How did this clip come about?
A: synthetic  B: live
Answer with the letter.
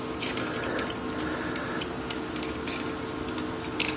B